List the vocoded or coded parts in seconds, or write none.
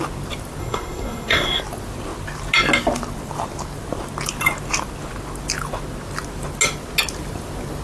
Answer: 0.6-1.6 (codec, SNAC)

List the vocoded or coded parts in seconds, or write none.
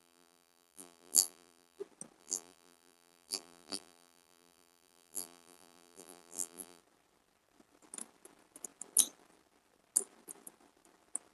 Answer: 0.0-1.8 (vocoder, BigVGAN v2); 2.2-6.8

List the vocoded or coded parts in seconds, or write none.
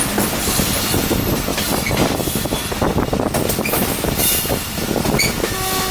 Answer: none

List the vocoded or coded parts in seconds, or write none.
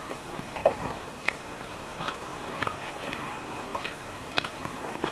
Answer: 0.0-5.1 (codec, SNAC)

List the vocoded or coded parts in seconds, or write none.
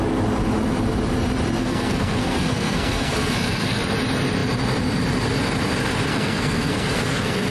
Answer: 1.6-3.8 (codec, SNAC); 6.1-7.5